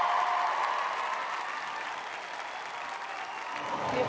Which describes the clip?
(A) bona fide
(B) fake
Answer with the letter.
A